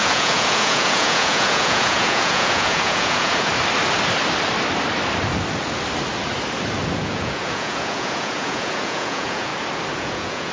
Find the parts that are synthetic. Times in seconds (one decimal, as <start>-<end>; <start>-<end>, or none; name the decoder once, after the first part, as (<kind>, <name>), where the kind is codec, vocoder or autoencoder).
0.0-3.5 (vocoder, Vocos); 7.0-9.5; 10.0-10.5